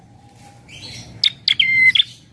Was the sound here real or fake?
real